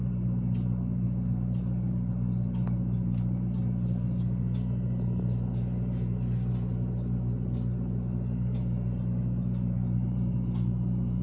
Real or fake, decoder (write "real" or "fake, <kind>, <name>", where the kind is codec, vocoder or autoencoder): real